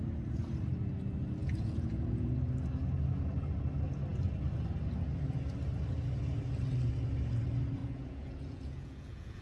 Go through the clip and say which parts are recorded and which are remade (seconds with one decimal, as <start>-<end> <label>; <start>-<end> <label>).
0.0-1.4 recorded; 1.4-2.4 remade; 2.4-7.8 recorded; 7.8-9.4 remade